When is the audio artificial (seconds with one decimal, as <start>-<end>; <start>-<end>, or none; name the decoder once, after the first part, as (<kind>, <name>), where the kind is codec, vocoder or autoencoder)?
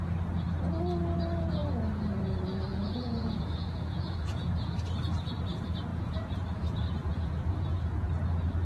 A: 2.7-4.7 (vocoder, Vocos); 5.9-8.1